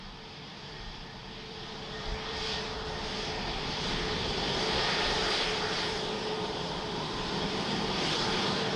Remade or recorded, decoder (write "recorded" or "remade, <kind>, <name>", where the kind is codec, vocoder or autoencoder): remade, vocoder, BigVGAN v2